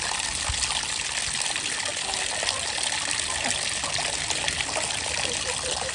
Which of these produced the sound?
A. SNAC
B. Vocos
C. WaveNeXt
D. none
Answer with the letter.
D